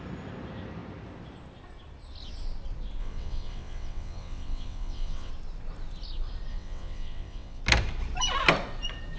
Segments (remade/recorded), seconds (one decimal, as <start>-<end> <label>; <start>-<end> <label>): 0.0-3.0 recorded; 3.0-5.3 remade; 5.3-6.5 recorded; 6.5-7.6 remade; 7.6-9.2 recorded